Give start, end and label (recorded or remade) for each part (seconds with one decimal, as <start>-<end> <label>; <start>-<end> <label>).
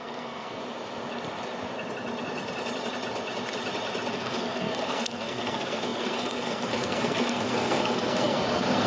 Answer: 0.0-0.6 remade; 0.6-4.1 recorded; 4.1-8.9 remade